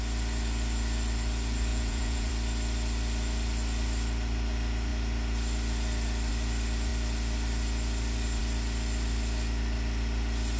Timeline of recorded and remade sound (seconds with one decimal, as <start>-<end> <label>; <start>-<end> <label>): 0.0-1.7 recorded; 1.7-2.3 remade; 2.3-10.6 recorded